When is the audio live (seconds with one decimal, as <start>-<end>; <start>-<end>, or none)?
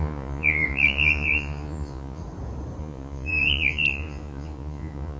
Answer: 2.2-2.8